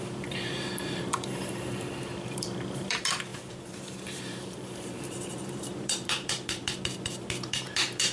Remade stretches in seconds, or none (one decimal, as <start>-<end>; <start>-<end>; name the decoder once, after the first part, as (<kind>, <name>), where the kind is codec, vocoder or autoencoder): 0.0-8.1 (vocoder, BigVGAN v2)